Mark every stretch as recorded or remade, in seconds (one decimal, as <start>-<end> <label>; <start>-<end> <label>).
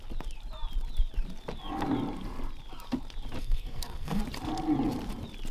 0.0-3.4 recorded; 3.4-4.2 remade; 4.2-5.5 recorded